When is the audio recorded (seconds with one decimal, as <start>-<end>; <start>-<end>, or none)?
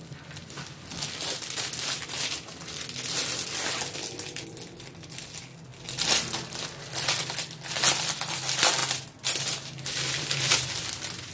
0.0-11.3